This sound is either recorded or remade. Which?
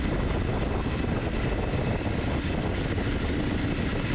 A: recorded